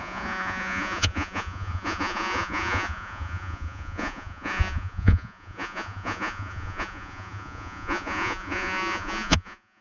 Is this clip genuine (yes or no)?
no